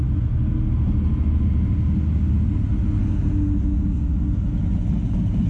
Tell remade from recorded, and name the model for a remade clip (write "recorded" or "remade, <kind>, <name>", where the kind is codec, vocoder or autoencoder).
recorded